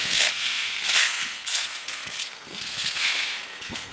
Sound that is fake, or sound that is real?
fake